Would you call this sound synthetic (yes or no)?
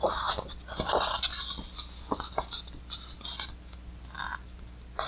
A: no